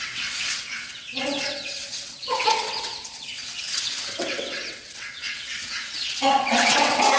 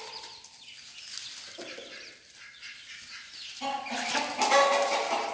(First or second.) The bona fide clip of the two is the second